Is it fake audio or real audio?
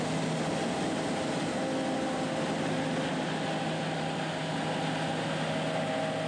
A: real